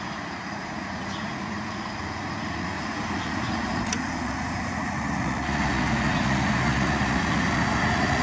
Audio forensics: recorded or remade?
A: remade